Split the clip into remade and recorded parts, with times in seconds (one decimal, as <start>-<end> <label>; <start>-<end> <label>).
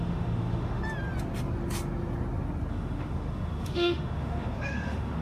0.0-0.8 remade; 0.8-2.7 recorded; 2.7-5.2 remade